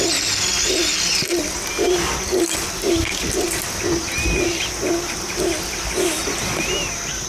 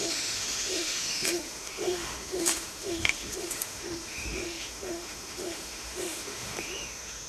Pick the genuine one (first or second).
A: first